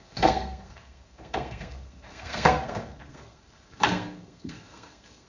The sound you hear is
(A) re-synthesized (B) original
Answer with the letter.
A